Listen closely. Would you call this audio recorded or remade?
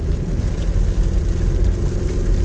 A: recorded